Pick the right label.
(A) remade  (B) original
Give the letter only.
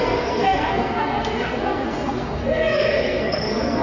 A